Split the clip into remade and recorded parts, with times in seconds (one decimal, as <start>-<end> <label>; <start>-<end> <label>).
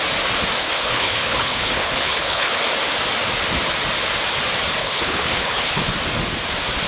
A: 0.0-0.6 recorded; 0.6-2.6 remade; 2.6-4.8 recorded; 4.8-5.8 remade; 5.8-6.9 recorded